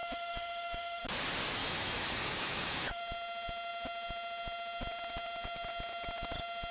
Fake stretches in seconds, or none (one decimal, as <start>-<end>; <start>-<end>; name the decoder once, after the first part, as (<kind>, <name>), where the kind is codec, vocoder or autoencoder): 0.0-1.0 (autoencoder, DAC-VAE); 1.6-3.0